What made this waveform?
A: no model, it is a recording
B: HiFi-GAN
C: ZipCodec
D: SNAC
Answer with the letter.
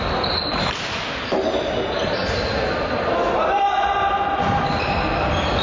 A